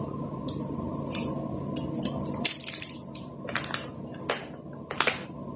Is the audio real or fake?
real